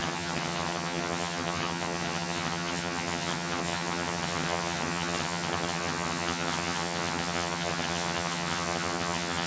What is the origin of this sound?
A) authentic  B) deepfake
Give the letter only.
B